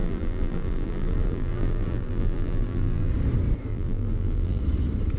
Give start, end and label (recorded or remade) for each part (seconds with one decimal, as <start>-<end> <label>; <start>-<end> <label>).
0.0-3.1 remade; 3.1-3.7 recorded; 3.7-4.6 remade; 4.6-5.2 recorded